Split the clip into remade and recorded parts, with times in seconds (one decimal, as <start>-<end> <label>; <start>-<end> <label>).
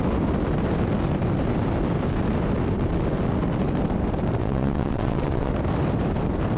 0.0-4.4 recorded; 4.4-5.5 remade; 5.5-6.6 recorded